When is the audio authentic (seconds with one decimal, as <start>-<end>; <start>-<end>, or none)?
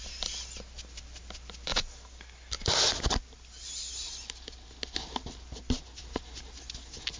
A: 0.0-7.2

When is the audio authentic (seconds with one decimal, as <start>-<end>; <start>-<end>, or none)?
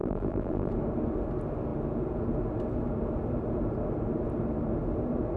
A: 0.7-5.4